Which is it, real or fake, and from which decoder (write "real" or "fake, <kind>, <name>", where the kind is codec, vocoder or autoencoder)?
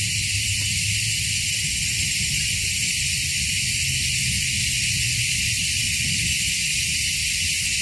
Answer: real